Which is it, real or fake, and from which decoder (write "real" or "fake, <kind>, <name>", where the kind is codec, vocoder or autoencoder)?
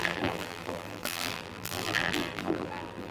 fake, vocoder, BigVGAN v2